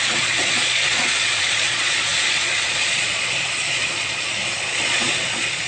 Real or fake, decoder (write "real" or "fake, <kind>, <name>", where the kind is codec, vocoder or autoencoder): fake, vocoder, Vocos